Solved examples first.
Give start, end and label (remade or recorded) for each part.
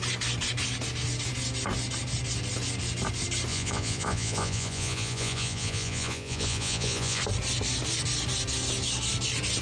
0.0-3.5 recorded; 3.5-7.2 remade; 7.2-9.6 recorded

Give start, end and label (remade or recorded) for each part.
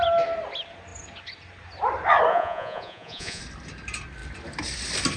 0.0-2.3 recorded; 2.3-3.4 remade; 3.4-5.2 recorded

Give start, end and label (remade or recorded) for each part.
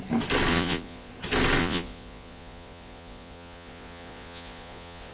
0.0-0.5 recorded; 0.5-1.1 remade; 1.1-1.6 recorded; 1.6-5.1 remade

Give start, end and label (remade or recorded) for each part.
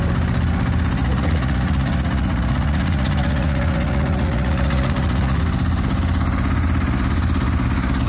0.0-1.0 recorded; 1.0-5.4 remade; 5.4-8.1 recorded